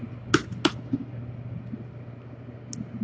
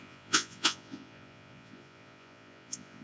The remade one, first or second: second